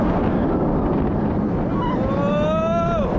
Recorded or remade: recorded